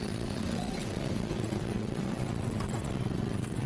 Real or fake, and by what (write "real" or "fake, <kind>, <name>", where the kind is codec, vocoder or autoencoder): fake, vocoder, WaveNeXt